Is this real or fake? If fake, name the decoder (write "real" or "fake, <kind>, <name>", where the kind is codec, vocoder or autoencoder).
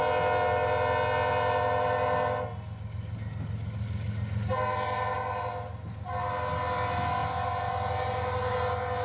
real